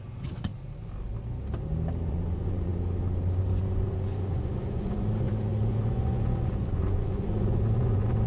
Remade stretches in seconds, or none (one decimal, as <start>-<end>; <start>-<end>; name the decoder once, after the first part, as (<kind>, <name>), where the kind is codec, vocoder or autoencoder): 0.0-0.5 (vocoder, Vocos); 2.1-2.7; 3.4-8.3